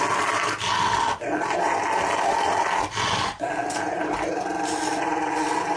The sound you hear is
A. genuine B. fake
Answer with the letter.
A